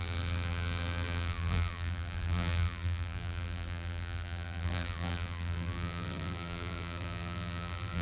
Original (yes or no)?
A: no